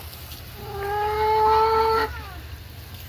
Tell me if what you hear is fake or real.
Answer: real